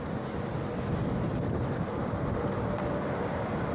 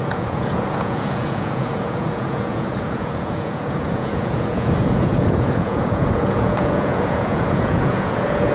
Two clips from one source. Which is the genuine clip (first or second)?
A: first